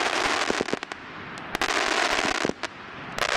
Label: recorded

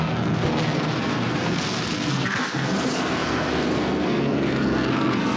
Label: remade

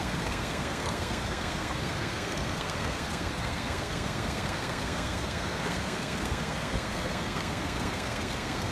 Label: remade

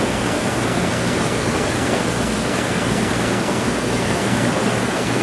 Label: remade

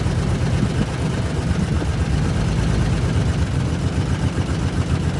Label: recorded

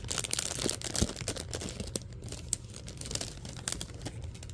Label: recorded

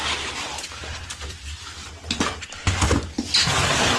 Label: recorded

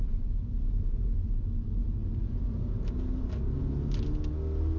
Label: recorded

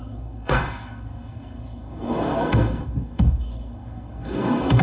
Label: remade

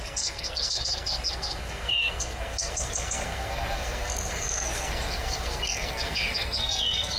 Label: remade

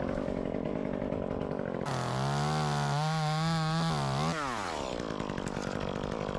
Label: recorded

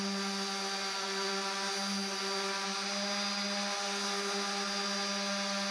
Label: recorded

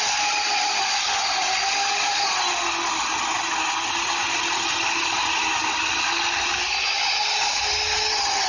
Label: recorded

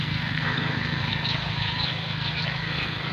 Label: remade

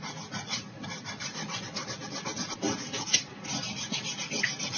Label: recorded